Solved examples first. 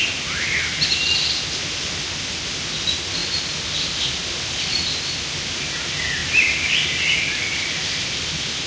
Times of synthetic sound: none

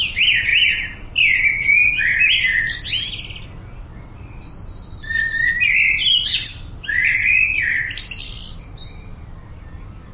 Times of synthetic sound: none

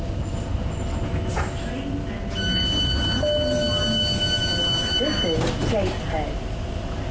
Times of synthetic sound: none